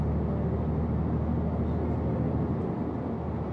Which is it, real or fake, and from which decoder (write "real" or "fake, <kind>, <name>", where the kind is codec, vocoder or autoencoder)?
real